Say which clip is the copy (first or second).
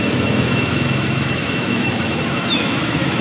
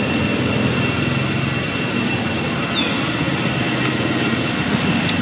first